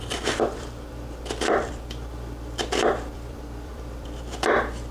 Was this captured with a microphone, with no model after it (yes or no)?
no